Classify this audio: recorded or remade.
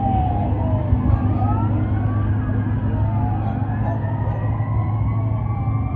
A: recorded